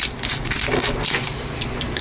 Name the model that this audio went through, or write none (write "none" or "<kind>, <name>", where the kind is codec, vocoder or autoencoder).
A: none